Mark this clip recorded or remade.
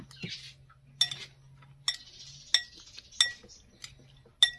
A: recorded